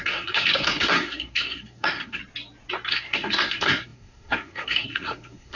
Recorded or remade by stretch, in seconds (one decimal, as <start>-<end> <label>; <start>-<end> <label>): 0.0-2.2 remade; 2.2-2.9 recorded; 2.9-5.6 remade